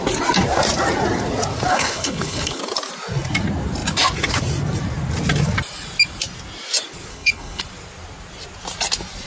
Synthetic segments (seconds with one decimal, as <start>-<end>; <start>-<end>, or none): 1.7-2.6; 7.1-7.6